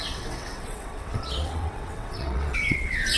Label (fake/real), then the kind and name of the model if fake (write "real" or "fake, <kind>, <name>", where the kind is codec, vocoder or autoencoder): fake, vocoder, WaveNeXt